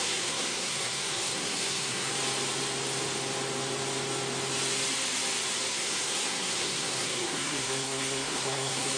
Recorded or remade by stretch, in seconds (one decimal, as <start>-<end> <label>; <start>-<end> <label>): 0.0-2.1 remade; 2.1-5.7 recorded; 5.7-9.0 remade